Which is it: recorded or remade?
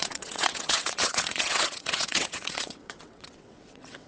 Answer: remade